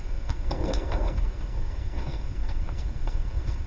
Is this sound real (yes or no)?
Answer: no